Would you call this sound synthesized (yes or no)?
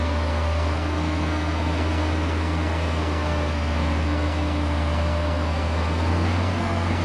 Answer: yes